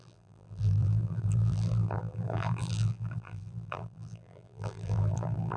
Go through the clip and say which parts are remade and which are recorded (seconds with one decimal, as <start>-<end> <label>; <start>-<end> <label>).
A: 0.0-5.6 remade